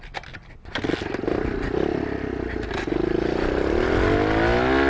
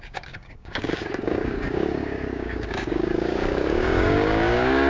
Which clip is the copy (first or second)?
second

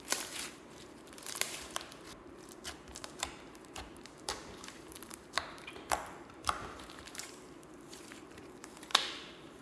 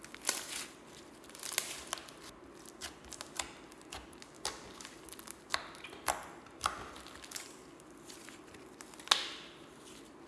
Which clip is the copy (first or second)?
first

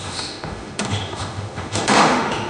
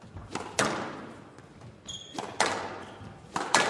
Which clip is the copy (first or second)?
first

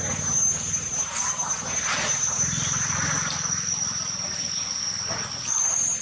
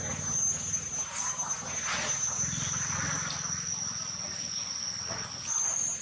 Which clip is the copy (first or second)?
first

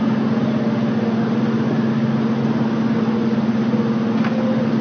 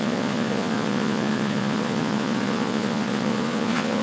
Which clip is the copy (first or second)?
second